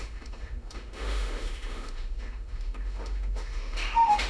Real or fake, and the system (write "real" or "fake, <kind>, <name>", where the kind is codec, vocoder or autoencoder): fake, autoencoder, DAC-VAE